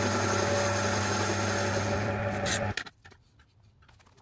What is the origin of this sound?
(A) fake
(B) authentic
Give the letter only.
B